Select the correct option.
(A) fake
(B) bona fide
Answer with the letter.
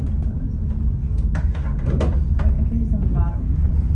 B